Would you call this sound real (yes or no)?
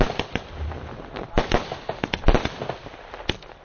yes